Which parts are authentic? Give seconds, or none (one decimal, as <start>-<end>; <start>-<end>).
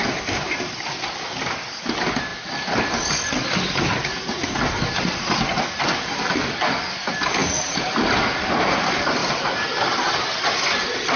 0.0-3.9; 4.5-7.4; 7.9-11.2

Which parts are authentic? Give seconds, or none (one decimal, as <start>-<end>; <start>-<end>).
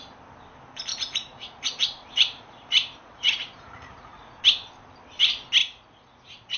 0.0-0.9; 4.4-5.6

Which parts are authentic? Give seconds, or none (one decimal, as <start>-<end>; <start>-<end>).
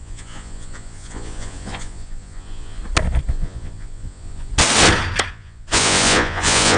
2.8-3.3; 4.5-5.3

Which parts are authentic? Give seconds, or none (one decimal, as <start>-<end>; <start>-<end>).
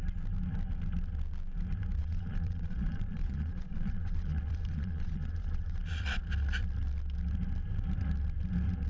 0.0-2.0; 6.2-8.9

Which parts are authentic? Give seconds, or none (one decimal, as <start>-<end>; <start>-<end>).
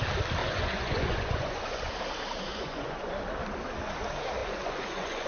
0.0-0.4; 1.8-2.5; 3.1-4.4